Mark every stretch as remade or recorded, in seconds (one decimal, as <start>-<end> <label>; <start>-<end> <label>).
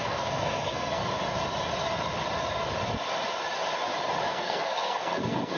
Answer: 0.0-1.0 remade; 1.0-4.3 recorded; 4.3-5.6 remade